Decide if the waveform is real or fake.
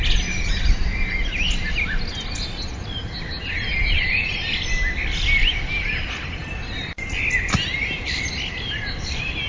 real